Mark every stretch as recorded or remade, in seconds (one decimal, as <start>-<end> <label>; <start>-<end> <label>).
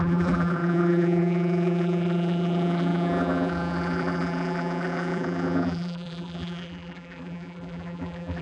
0.0-8.4 remade